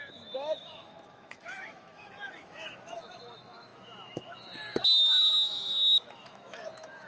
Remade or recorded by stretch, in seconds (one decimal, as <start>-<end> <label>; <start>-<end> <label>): 0.0-7.1 remade